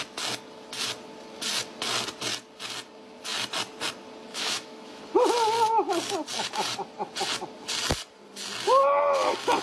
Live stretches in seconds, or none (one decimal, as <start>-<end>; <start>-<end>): 0.0-4.3; 5.0-9.6